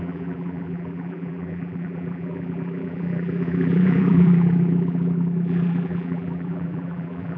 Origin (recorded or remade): remade